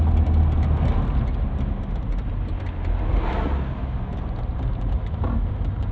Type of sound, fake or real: real